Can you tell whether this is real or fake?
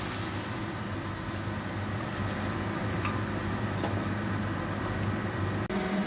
real